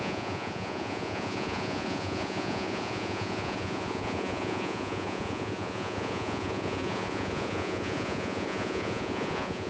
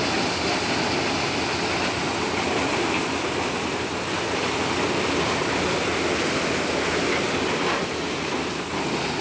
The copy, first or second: first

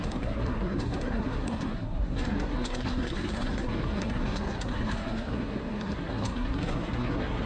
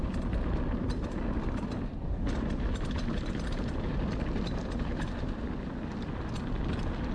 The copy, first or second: first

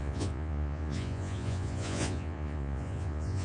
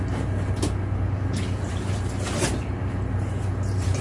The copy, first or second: first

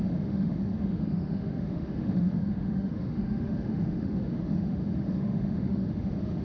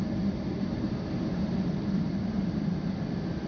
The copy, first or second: first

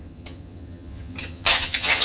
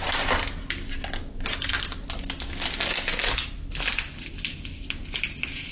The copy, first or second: first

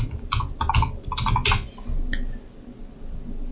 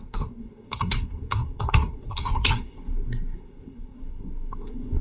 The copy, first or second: second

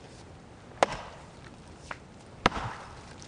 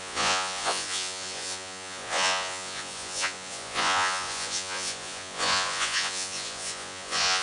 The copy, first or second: second